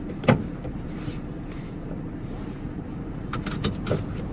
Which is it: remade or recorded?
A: remade